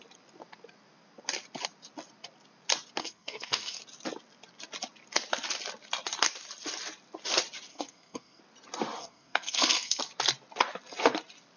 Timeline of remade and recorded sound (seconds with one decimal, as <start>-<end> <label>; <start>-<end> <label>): 0.0-3.0 recorded; 3.0-3.8 remade; 3.8-7.7 recorded; 7.7-8.4 remade; 8.4-9.0 recorded; 9.0-10.0 remade; 10.0-11.6 recorded